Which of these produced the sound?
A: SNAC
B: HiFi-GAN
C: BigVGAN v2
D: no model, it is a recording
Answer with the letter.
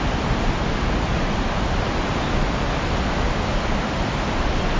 D